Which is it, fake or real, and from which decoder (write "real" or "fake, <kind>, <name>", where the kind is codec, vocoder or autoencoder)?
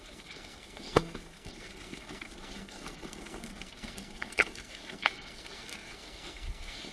fake, codec, SNAC